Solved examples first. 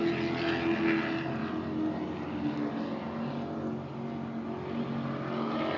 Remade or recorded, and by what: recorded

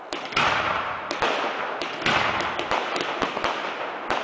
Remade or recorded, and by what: recorded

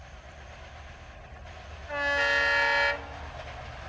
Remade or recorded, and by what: recorded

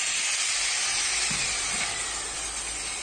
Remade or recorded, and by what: recorded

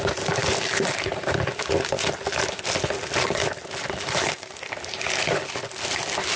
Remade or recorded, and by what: recorded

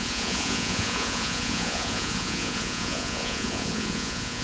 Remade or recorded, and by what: remade, vocoder, Vocos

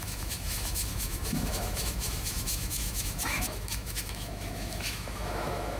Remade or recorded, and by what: remade, autoencoder, DAC-VAE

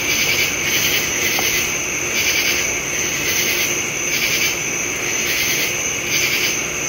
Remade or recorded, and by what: recorded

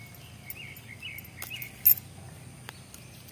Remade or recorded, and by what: recorded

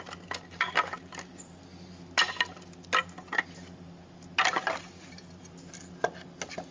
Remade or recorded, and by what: recorded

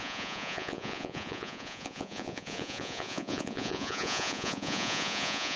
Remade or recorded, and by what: remade, vocoder, Vocos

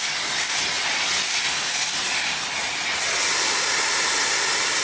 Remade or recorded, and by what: recorded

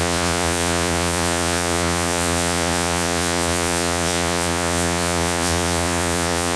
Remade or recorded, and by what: remade, vocoder, Vocos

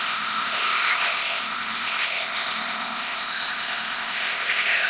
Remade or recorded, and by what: remade, codec, ZipCodec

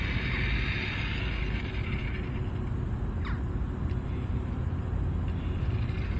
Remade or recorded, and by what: recorded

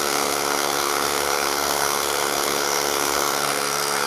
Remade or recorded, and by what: remade, codec, SNAC